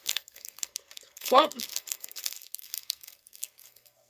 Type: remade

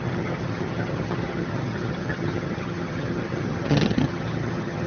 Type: remade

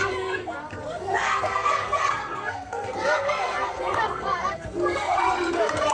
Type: remade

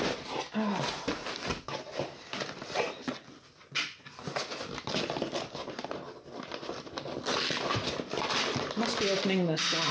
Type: recorded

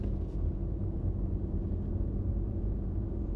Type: remade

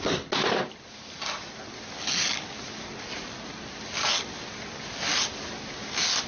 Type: recorded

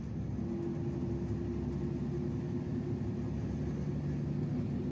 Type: recorded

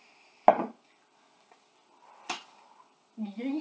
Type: recorded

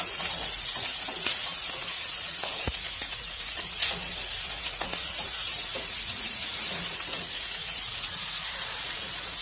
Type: remade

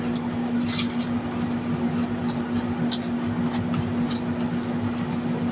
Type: recorded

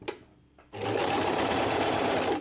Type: remade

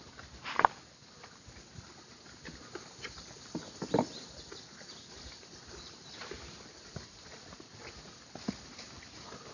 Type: recorded